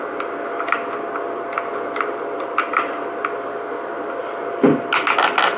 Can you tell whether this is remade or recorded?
recorded